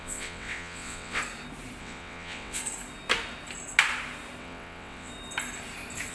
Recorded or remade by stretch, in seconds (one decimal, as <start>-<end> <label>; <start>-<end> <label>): 0.0-1.2 remade; 1.2-1.8 recorded; 1.8-2.6 remade; 2.6-4.4 recorded; 4.4-5.1 remade; 5.1-6.1 recorded